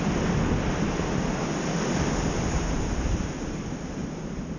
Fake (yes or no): no